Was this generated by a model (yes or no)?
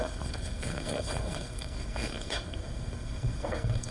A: yes